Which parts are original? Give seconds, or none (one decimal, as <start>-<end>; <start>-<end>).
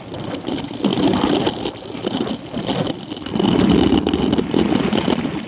0.0-5.5